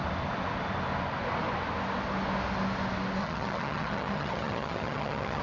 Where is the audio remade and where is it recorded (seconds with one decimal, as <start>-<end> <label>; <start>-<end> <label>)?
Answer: 0.0-3.2 recorded; 3.2-5.4 remade